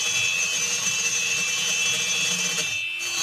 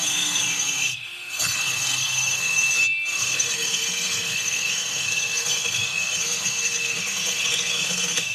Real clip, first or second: first